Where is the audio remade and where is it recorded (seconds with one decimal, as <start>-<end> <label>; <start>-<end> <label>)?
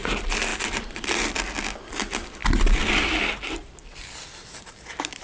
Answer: 0.0-5.2 recorded